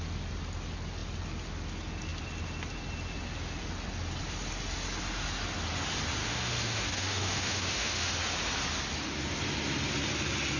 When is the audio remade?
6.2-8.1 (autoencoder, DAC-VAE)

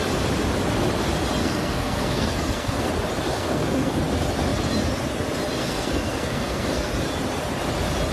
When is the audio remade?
1.4-2.9 (codec, SNAC); 3.3-4.0; 5.6-6.9

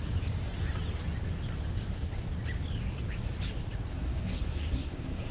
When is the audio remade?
3.9-5.3 (codec, SNAC)

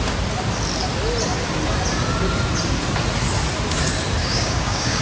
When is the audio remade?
4.2-5.0 (codec, DAC)

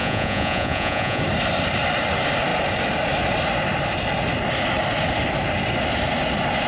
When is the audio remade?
0.0-1.2 (vocoder, Vocos)